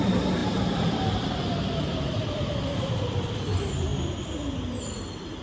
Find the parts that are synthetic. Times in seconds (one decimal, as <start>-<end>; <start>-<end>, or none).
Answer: 0.4-3.5